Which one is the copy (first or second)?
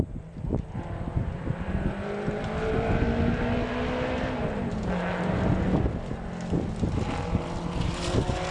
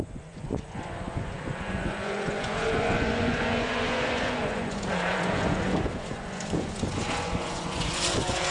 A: second